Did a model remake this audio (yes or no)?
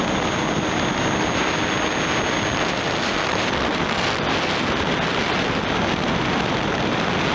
no